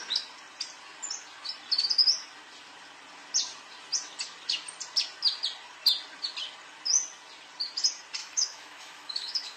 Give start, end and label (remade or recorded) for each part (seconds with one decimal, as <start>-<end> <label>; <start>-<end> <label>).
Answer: 0.0-8.2 recorded; 8.2-9.6 remade